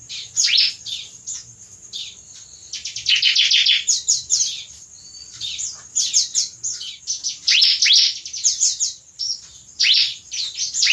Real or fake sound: real